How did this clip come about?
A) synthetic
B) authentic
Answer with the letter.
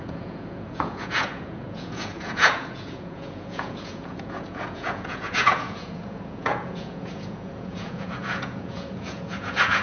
A